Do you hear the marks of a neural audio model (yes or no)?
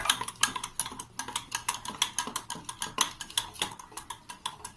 no